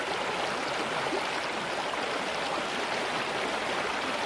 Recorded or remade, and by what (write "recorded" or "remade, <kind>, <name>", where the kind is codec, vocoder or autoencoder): recorded